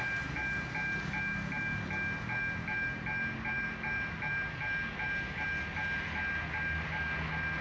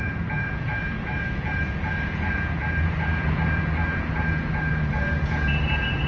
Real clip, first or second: first